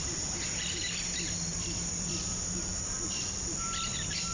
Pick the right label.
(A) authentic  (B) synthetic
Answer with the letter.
B